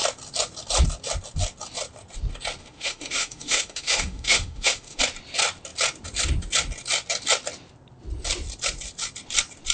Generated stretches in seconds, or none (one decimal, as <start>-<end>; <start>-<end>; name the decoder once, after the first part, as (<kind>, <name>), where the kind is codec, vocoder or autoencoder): 2.6-5.0 (autoencoder, DAC-VAE)